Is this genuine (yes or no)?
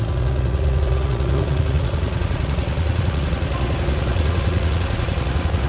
no